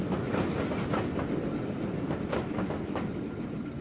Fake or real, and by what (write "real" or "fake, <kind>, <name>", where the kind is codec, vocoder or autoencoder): real